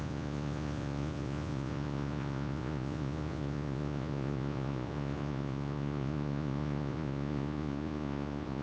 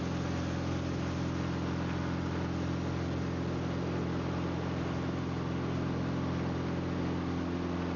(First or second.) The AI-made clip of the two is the first